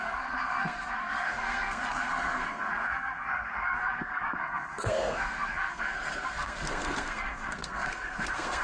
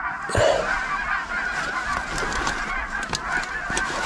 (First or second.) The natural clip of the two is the second